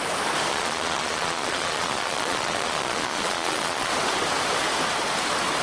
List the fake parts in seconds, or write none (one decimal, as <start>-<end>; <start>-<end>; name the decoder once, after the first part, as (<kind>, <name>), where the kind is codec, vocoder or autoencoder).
0.5-3.9 (vocoder, Vocos)